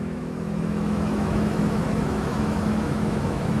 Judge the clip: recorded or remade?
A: remade